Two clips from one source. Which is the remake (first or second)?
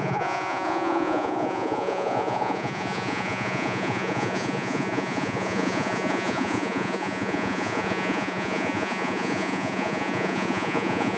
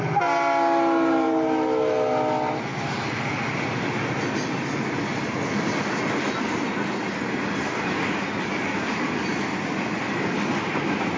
first